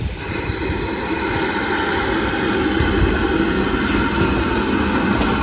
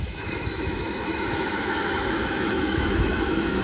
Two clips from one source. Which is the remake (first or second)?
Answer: second